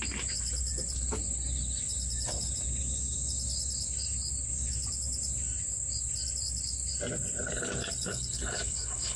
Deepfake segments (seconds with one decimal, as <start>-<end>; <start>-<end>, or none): 8.1-9.2